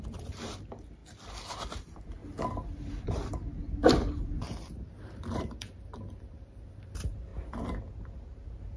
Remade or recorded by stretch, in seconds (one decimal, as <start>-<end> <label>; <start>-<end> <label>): 0.0-1.0 remade; 1.0-1.8 recorded; 1.8-2.2 remade; 2.2-2.9 recorded; 2.9-7.3 remade; 7.3-8.0 recorded; 8.0-8.8 remade